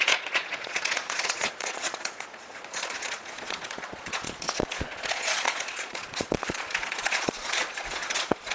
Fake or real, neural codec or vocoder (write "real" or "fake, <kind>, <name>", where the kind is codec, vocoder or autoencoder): fake, vocoder, Vocos